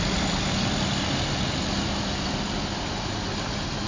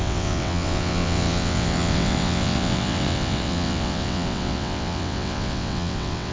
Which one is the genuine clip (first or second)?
first